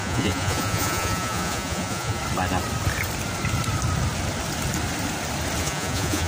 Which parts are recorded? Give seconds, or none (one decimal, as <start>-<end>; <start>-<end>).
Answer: 2.2-5.6